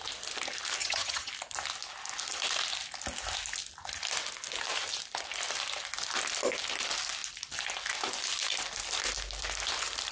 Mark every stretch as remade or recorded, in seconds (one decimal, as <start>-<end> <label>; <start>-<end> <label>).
0.0-0.8 recorded; 0.8-1.3 remade; 1.3-10.1 recorded

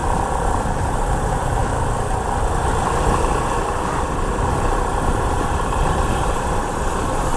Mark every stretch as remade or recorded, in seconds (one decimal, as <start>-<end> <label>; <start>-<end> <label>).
0.0-0.8 recorded; 0.8-1.6 remade; 1.6-4.5 recorded; 4.5-7.4 remade

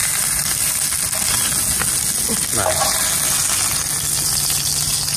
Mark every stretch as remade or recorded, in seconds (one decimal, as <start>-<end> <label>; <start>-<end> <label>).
0.0-5.2 recorded

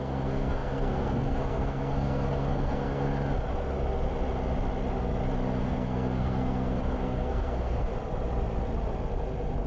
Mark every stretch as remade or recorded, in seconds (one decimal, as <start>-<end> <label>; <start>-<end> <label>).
0.0-3.1 remade; 3.1-5.6 recorded; 5.6-7.9 remade; 7.9-9.7 recorded